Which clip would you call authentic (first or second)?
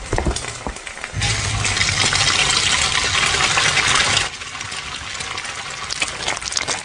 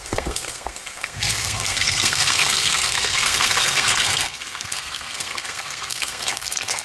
first